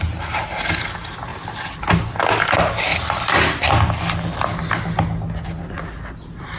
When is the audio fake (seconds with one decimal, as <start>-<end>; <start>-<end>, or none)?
1.3-2.2; 2.9-3.6